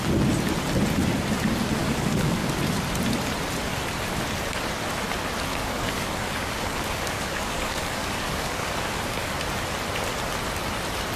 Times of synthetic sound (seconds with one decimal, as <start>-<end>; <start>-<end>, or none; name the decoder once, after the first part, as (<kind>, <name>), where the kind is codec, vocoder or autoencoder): 1.8-2.6 (codec, DAC); 5.5-9.4